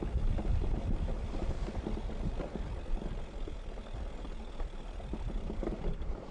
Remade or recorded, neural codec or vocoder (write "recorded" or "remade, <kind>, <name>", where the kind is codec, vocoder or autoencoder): recorded